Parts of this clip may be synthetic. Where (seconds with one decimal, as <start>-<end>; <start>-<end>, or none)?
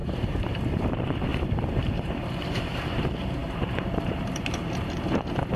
0.0-5.6